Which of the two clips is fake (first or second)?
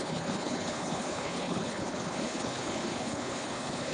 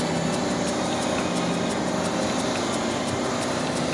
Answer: first